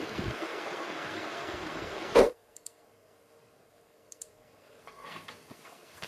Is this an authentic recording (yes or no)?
no